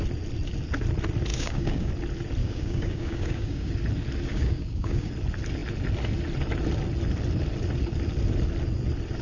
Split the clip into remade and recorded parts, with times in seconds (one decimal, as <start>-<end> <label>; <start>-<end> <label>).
0.0-1.3 recorded; 1.3-1.9 remade; 1.9-2.4 recorded; 2.4-3.7 remade; 3.7-4.3 recorded; 4.3-5.1 remade; 5.1-9.2 recorded